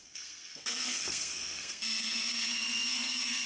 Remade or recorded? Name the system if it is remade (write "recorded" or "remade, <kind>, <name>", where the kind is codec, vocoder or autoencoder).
remade, codec, SNAC